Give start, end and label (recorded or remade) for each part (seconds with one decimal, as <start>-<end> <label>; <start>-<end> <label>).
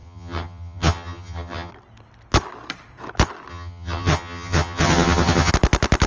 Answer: 0.0-1.7 remade; 1.7-3.5 recorded; 3.5-5.5 remade; 5.5-6.1 recorded